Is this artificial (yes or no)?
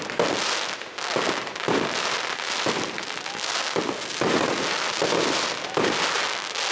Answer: no